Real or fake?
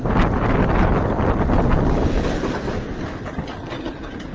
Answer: real